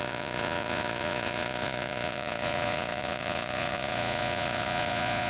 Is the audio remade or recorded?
remade